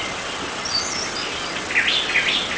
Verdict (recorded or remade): recorded